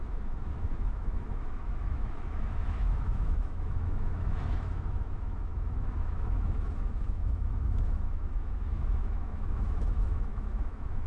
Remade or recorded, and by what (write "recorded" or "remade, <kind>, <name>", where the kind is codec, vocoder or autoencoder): remade, autoencoder, DAC-VAE